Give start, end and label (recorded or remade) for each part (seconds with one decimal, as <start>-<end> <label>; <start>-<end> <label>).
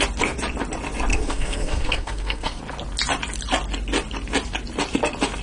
0.0-1.1 recorded; 1.1-2.6 remade; 2.6-5.4 recorded